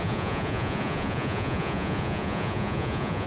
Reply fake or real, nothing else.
fake